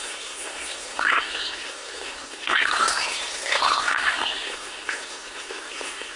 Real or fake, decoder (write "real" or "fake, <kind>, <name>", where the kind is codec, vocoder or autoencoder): fake, codec, SNAC